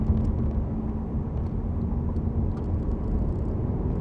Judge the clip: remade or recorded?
recorded